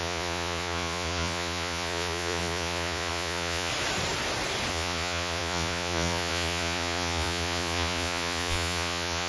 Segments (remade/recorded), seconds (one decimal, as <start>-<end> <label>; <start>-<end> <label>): 0.0-3.7 remade; 3.7-4.7 recorded; 4.7-9.3 remade